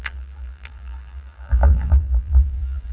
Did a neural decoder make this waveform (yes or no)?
yes